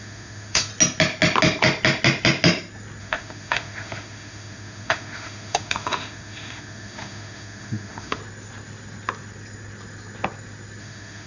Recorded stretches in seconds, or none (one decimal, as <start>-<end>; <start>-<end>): 0.7-3.0; 8.2-10.8